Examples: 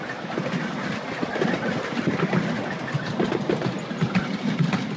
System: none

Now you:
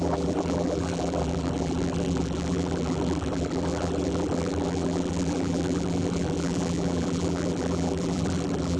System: vocoder, BigVGAN v2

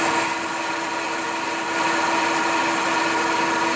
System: none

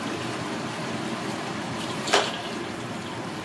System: vocoder, BigVGAN v2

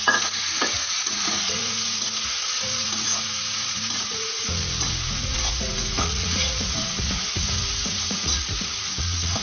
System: vocoder, Vocos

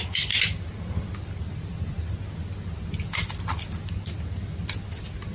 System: none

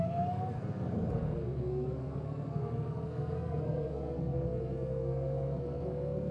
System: codec, SNAC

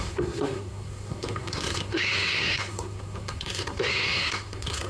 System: codec, SNAC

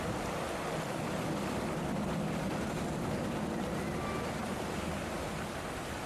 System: none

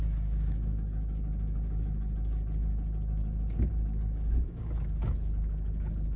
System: codec, DAC